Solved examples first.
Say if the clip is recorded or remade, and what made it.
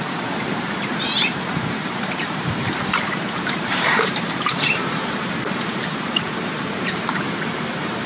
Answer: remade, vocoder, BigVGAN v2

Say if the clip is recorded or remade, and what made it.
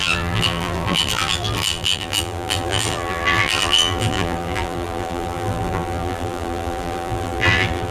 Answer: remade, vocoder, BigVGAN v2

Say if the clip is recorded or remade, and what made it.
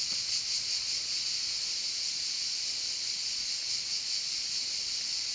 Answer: recorded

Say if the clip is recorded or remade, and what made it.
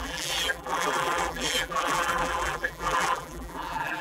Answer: remade, vocoder, BigVGAN v2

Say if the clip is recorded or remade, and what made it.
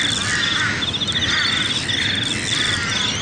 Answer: recorded